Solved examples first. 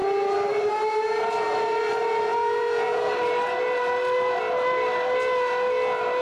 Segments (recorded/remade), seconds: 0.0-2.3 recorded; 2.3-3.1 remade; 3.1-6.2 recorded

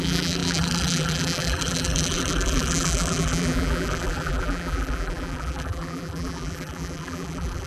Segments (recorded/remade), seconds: 0.0-7.7 remade

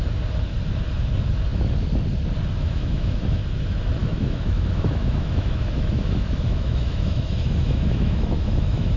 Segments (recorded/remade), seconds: 0.0-2.6 recorded; 2.6-3.4 remade; 3.4-4.0 recorded; 4.0-9.0 remade